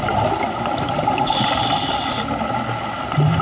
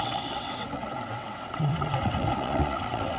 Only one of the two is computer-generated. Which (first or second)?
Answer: second